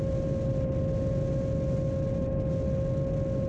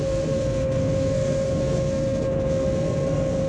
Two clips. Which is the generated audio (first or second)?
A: second